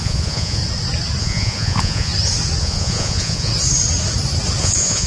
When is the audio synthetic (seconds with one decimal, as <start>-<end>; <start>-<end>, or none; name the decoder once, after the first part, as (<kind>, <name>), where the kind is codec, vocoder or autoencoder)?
0.0-0.6 (vocoder, Vocos); 1.2-2.1; 2.6-3.5; 4.6-5.1